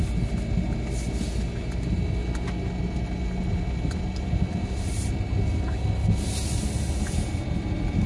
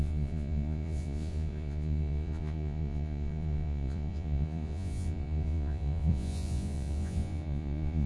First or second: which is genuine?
first